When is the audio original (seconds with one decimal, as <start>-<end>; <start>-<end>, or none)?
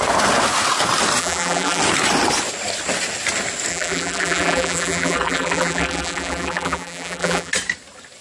0.0-1.2; 1.8-3.7; 7.5-8.2